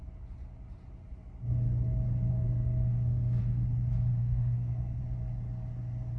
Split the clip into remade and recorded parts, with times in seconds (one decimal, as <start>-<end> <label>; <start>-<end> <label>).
0.0-2.3 recorded; 2.3-3.4 remade; 3.4-4.2 recorded; 4.2-5.0 remade; 5.0-6.2 recorded